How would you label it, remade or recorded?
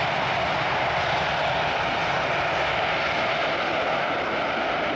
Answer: recorded